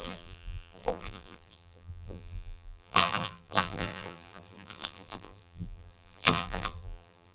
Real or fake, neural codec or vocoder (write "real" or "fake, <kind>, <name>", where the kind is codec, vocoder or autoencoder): fake, vocoder, BigVGAN v2